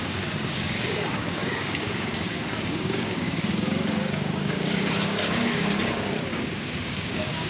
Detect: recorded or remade remade